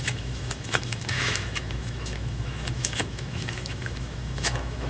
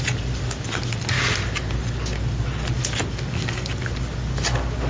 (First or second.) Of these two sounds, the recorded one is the second